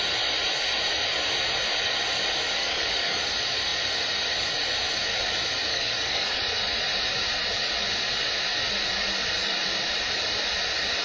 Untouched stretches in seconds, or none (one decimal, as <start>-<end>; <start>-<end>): 0.0-2.6; 3.2-5.7; 6.4-11.0